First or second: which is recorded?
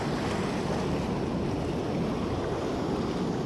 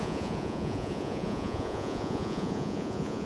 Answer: first